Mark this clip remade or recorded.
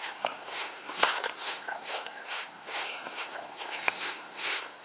remade